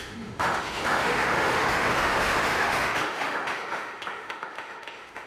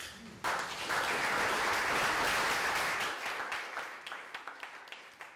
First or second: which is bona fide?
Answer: second